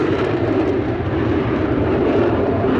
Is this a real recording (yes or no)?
no